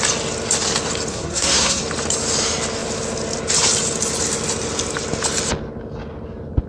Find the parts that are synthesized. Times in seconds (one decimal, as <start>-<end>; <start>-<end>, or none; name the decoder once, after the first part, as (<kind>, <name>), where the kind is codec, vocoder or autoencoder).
1.1-1.8 (codec, SNAC)